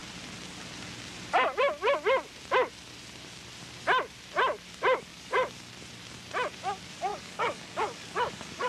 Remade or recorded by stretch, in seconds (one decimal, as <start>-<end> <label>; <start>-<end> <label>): 0.0-5.1 recorded; 5.1-5.7 remade; 5.7-7.1 recorded; 7.1-8.7 remade